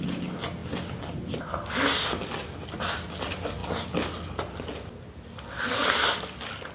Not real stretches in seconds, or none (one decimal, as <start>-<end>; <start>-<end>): none